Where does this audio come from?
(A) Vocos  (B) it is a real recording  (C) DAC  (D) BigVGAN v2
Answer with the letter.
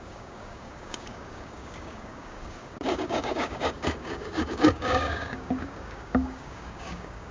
C